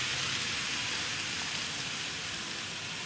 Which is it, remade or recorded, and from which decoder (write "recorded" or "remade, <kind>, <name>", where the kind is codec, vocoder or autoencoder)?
recorded